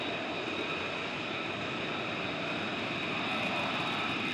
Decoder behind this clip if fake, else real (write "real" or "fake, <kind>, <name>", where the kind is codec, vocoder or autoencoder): real